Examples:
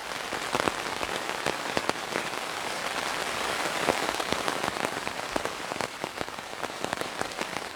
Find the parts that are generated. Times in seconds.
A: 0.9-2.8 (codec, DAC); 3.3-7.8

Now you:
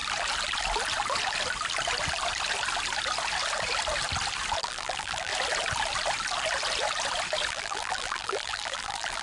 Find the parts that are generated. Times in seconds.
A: 4.6-5.3 (vocoder, BigVGAN v2); 7.5-9.2

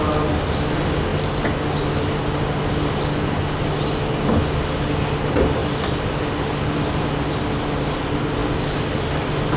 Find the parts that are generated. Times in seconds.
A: none